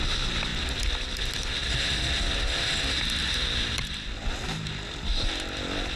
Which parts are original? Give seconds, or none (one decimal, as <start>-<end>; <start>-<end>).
0.0-6.0